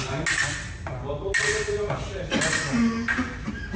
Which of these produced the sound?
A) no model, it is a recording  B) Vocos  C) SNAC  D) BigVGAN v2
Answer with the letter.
A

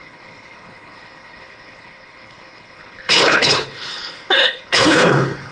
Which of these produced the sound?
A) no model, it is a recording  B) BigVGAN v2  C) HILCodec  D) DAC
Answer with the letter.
C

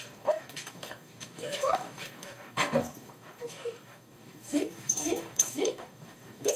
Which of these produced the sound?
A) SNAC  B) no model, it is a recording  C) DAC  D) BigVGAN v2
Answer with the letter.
C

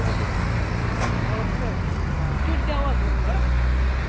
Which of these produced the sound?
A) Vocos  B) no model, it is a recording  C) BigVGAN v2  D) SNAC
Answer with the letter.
B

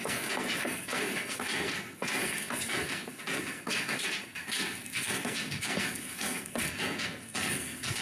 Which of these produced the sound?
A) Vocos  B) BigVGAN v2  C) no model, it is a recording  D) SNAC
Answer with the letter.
D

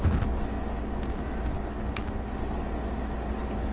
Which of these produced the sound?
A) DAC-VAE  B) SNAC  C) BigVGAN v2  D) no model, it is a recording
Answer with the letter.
D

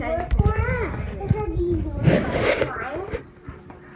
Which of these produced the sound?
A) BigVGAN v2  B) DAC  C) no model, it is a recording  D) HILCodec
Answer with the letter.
C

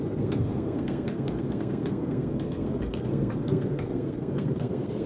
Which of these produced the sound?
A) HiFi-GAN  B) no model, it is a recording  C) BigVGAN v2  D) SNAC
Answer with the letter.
D